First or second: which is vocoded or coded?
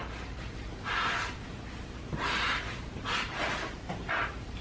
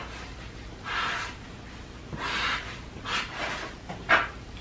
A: first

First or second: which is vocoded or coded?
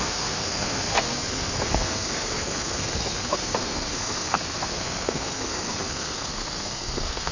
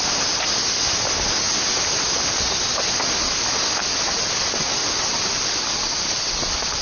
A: first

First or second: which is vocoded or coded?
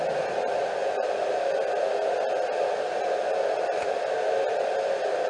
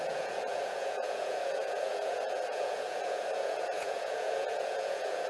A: second